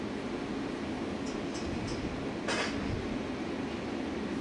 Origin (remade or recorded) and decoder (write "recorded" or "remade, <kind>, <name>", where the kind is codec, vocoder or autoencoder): recorded